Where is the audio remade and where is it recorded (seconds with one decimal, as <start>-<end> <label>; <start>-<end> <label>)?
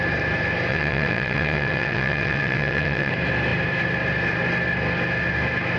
0.0-0.7 recorded; 0.7-3.1 remade; 3.1-5.8 recorded